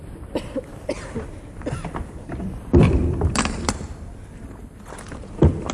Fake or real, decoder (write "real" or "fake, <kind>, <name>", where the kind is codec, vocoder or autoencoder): fake, vocoder, BigVGAN v2